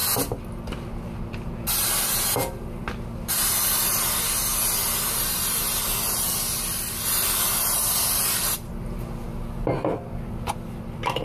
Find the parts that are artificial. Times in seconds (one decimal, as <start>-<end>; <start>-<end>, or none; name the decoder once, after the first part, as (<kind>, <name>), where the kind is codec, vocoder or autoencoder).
none